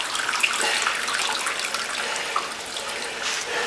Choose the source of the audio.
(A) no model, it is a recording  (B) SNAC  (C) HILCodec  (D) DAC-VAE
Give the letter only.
A